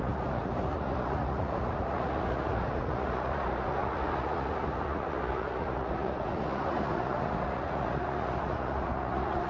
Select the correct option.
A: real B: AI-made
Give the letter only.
B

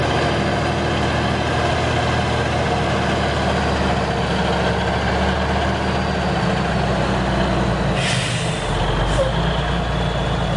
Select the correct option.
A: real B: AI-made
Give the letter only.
A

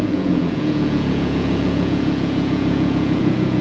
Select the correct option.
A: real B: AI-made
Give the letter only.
B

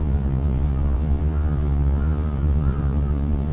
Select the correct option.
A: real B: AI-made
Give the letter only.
B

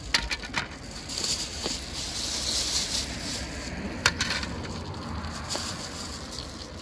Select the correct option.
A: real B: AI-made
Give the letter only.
A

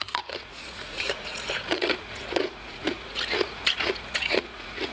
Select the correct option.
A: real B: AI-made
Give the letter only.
B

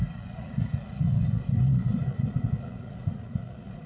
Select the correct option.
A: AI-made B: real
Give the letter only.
A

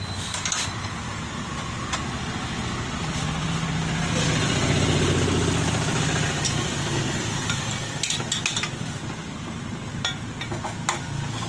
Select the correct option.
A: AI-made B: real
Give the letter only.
B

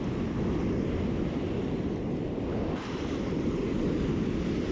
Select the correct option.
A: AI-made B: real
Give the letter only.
B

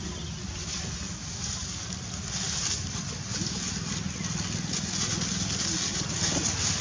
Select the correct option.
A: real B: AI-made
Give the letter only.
A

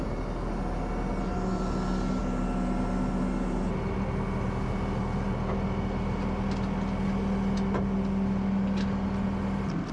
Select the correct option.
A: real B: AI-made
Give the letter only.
A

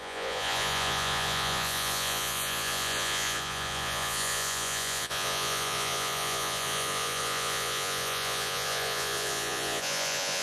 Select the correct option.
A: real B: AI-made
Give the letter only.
B